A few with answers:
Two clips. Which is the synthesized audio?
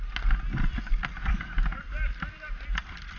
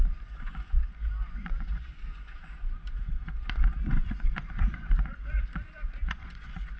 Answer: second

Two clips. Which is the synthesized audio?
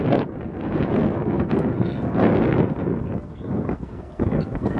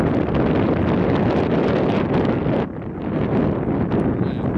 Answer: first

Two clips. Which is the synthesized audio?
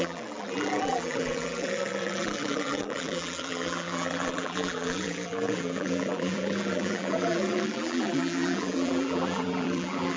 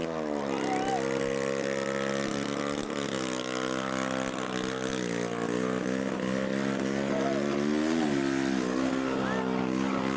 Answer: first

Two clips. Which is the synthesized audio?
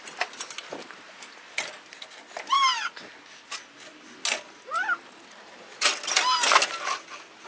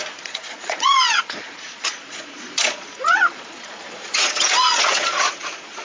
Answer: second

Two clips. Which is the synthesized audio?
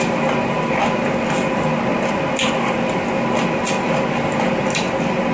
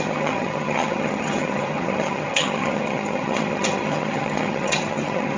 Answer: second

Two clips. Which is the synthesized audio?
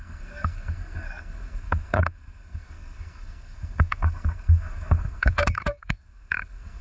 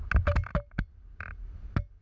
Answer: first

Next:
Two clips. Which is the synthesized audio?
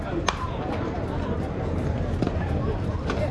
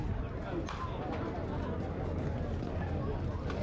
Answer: first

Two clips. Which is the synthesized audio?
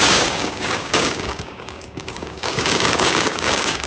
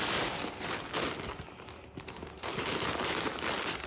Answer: first